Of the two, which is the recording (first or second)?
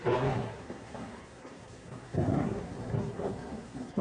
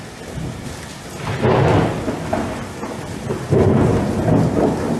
second